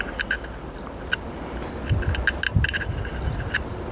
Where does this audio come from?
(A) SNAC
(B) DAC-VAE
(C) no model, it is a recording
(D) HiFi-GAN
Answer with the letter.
C